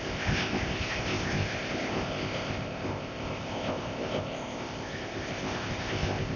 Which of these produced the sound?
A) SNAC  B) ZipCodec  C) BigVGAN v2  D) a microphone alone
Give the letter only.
B